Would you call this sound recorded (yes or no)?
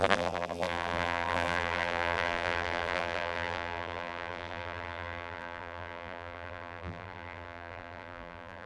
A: no